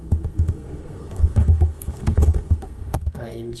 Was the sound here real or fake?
fake